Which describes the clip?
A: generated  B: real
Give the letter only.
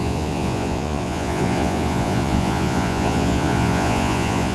A